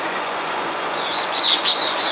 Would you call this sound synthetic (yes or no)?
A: yes